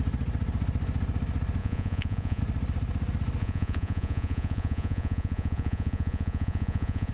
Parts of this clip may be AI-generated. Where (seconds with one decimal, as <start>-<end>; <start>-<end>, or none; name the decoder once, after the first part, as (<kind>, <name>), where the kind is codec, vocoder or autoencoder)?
1.6-2.4 (vocoder, Vocos); 3.4-7.1